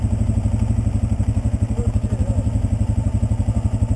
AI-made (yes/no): no